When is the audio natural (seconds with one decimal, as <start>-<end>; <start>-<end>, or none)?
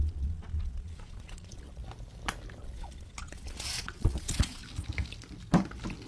1.8-2.6; 4.6-6.1